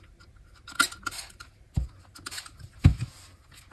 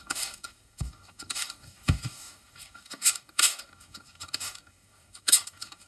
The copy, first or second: second